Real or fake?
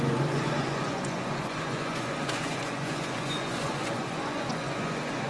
fake